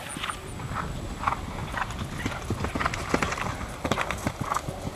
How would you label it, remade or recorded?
recorded